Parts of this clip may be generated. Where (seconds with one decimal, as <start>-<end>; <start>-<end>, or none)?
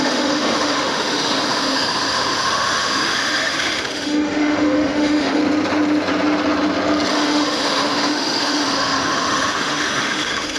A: 0.0-5.4; 7.1-10.6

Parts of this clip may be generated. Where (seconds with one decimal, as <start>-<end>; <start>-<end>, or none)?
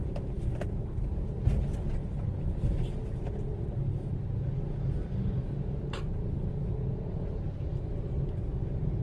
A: none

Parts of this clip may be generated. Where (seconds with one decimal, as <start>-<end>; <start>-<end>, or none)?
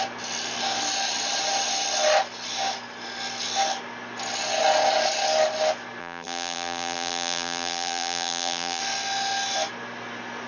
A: 6.0-8.8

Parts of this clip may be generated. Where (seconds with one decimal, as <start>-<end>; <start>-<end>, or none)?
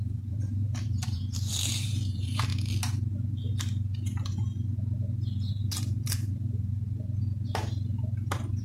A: 0.0-2.5; 5.5-6.8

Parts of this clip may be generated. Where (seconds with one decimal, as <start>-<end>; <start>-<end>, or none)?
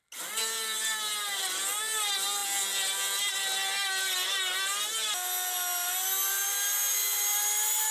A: none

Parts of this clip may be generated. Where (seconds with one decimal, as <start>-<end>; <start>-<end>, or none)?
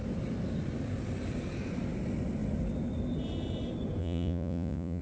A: 4.0-5.0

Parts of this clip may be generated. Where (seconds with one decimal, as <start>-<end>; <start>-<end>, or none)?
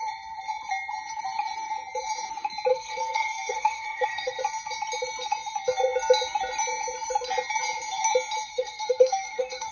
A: 2.7-4.4; 8.5-9.7